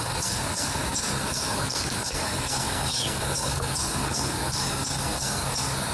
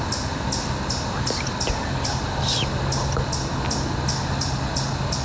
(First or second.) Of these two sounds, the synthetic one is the first